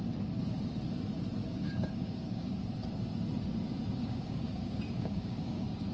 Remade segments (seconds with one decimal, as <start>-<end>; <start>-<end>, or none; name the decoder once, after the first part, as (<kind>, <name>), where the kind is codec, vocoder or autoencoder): 1.5-2.5 (codec, DAC); 4.0-5.9